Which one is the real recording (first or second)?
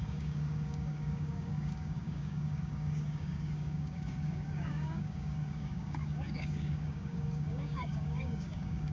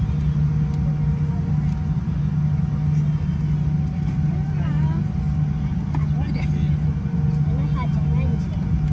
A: second